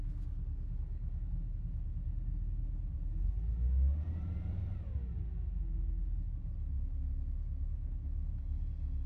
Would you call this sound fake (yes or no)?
no